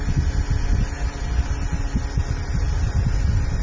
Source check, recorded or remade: recorded